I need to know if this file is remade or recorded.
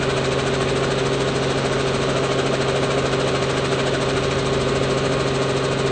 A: recorded